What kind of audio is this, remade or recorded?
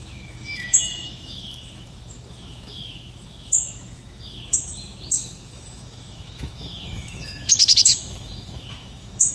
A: remade